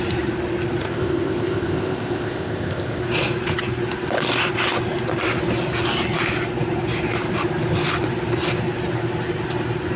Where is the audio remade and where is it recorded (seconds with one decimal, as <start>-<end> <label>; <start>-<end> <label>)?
0.0-0.8 recorded; 0.8-3.0 remade; 3.0-10.0 recorded